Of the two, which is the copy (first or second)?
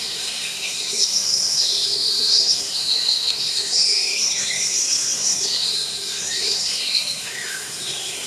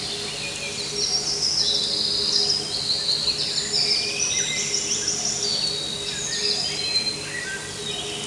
first